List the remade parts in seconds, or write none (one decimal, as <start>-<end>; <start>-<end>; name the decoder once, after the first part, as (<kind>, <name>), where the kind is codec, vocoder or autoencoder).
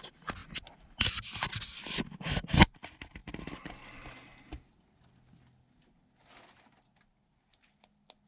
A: none